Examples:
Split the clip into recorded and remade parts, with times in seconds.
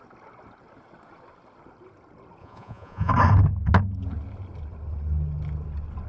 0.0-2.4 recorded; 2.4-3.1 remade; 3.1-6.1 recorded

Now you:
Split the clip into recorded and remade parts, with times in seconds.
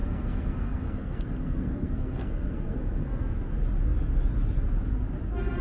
0.0-3.4 remade; 3.4-5.6 recorded